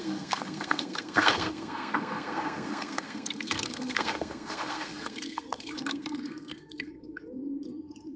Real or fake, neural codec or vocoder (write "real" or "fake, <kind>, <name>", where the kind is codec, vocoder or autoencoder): fake, codec, SNAC